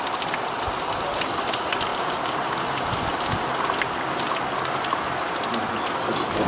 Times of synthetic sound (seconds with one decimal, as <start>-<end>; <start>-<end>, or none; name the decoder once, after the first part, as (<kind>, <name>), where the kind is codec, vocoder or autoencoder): none